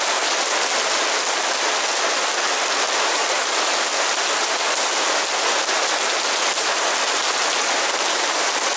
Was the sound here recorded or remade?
recorded